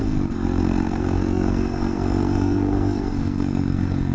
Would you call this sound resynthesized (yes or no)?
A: yes